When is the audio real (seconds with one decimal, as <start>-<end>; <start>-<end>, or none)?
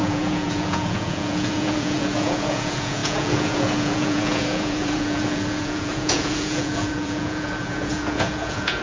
none